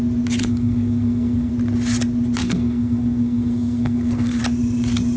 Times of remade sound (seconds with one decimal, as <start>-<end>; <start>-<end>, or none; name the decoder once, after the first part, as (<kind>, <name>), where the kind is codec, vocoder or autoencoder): 0.4-1.5 (codec, SNAC); 2.4-4.4